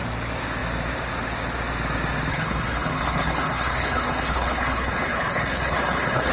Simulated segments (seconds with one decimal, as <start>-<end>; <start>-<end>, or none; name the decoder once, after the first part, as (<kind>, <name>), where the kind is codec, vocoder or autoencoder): 2.3-6.3 (codec, HILCodec)